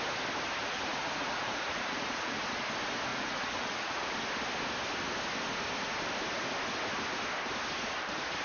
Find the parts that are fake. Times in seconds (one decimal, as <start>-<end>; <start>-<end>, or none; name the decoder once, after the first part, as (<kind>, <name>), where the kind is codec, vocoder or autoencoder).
0.6-2.4 (vocoder, Vocos); 3.1-4.1